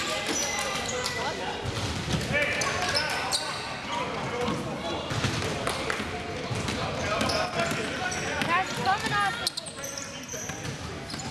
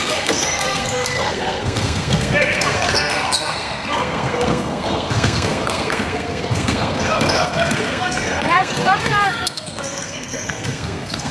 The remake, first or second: second